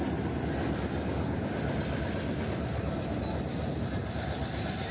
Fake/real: real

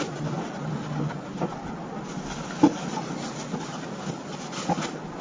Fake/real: real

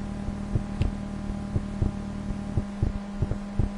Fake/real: real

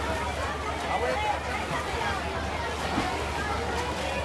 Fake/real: real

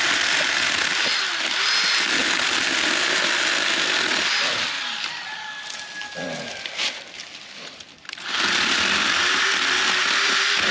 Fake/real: real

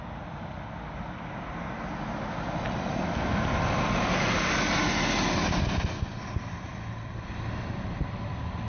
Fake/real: real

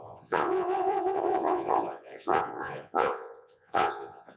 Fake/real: fake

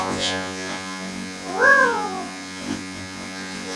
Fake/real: fake